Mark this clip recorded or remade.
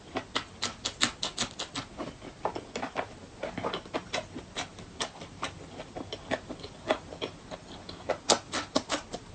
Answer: recorded